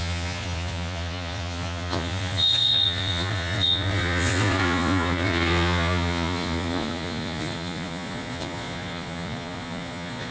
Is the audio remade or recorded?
remade